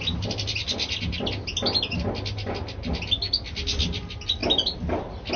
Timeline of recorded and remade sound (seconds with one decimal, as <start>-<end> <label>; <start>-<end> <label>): 0.0-5.4 recorded